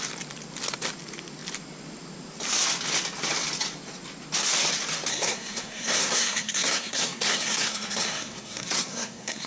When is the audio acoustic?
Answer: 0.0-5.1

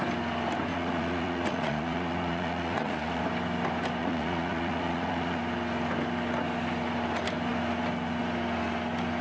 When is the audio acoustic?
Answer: 0.0-0.7; 3.2-4.0; 5.4-9.2

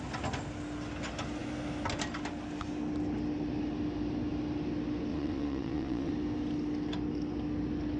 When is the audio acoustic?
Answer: 0.0-5.1; 6.1-8.0

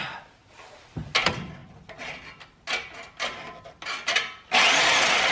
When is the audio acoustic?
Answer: 0.0-5.3

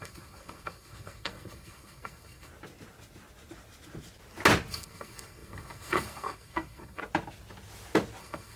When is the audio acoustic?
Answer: 2.5-4.7; 7.0-8.2

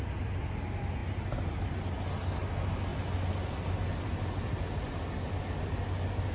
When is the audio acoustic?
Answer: 0.0-6.3